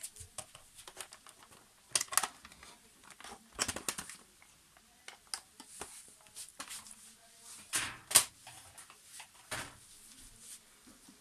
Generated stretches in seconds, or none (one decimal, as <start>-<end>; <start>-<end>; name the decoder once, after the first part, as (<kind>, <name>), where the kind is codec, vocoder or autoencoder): none